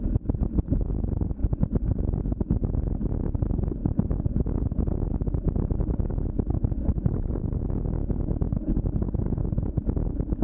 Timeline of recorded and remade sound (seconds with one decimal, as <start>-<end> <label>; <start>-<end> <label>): 0.0-6.9 recorded; 6.9-7.6 remade; 7.6-10.4 recorded